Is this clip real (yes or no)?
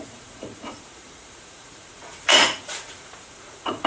no